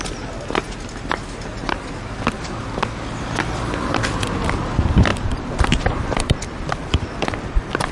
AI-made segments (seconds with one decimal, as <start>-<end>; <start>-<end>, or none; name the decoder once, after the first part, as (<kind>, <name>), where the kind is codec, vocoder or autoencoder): none